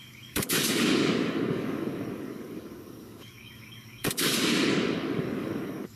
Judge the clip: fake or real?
fake